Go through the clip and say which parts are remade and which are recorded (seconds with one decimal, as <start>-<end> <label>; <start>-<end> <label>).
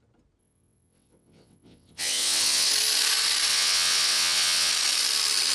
0.0-0.4 recorded; 0.4-2.7 remade; 2.7-3.5 recorded; 3.5-4.7 remade; 4.7-5.5 recorded